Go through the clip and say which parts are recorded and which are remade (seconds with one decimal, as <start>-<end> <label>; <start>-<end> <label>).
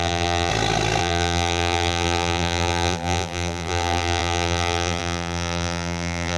0.0-0.5 remade; 0.5-1.0 recorded; 1.0-6.4 remade